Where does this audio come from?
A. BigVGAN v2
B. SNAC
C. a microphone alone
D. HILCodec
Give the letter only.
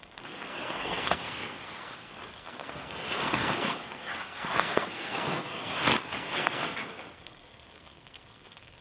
B